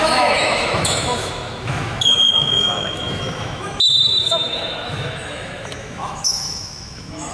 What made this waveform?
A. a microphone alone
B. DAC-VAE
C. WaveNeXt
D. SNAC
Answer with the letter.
B